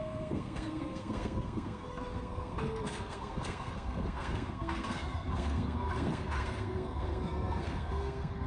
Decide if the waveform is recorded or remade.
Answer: remade